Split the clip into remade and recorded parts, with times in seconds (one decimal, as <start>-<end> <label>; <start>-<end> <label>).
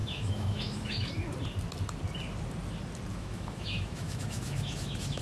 0.0-1.1 remade; 1.1-3.1 recorded; 3.1-5.2 remade